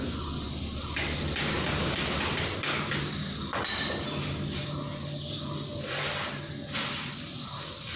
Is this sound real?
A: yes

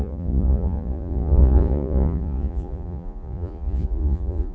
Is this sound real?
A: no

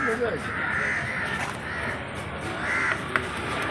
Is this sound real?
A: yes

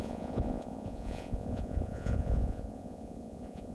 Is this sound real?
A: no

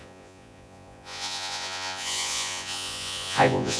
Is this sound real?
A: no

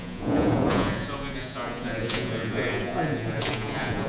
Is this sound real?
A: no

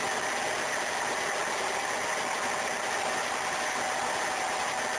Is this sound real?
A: yes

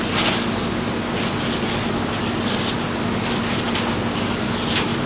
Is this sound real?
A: yes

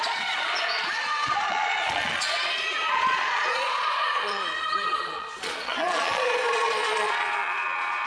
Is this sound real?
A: no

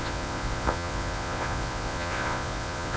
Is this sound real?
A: no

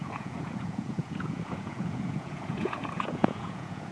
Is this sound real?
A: no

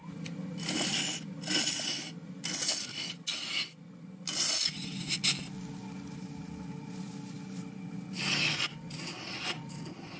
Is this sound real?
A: yes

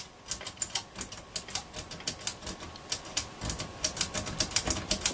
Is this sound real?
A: yes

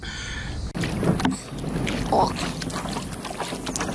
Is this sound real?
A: yes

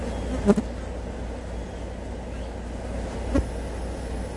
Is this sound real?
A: yes